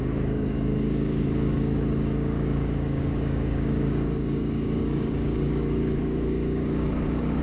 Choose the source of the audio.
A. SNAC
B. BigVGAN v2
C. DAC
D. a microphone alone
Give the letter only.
C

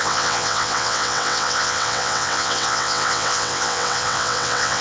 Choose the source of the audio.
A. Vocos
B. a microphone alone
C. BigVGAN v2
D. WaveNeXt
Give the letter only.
D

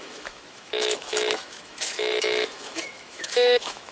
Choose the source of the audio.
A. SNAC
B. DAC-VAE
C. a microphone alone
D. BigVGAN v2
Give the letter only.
B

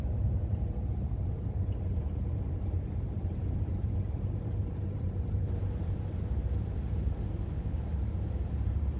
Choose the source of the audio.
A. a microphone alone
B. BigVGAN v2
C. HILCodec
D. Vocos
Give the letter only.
B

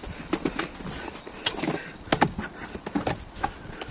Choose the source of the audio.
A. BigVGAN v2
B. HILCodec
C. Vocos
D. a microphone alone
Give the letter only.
D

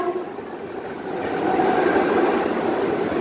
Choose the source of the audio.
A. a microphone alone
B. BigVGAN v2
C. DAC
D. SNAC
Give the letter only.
A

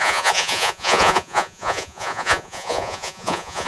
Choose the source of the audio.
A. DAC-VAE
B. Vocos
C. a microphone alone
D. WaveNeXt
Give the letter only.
B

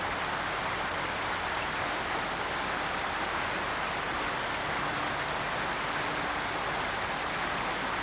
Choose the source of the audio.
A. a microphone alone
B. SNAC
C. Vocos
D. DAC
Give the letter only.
A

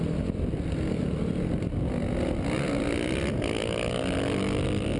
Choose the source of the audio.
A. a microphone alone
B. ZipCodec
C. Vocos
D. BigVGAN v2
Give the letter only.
A